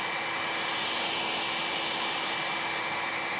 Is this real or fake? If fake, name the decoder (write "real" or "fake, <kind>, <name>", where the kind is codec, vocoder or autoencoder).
real